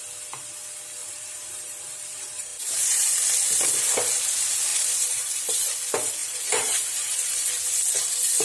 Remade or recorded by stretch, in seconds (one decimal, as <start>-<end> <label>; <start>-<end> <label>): 0.0-1.0 recorded; 1.0-3.1 remade; 3.1-4.7 recorded; 4.7-5.3 remade; 5.3-6.2 recorded; 6.2-7.1 remade; 7.1-8.4 recorded